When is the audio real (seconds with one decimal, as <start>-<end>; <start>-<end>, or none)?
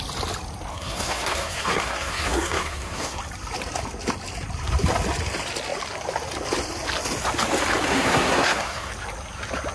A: 0.0-0.7; 3.2-7.9; 8.9-9.7